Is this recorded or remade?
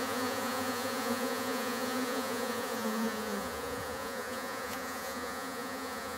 remade